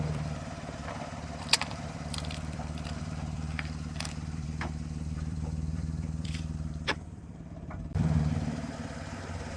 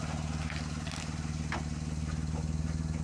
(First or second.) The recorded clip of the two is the second